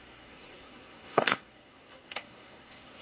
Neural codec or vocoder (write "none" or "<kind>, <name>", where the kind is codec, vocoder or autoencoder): codec, SNAC